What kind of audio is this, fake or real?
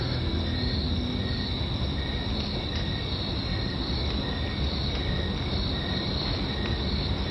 real